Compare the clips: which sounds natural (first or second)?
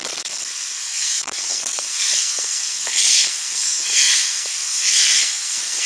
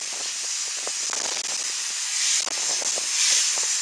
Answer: second